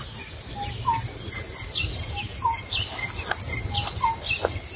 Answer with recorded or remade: recorded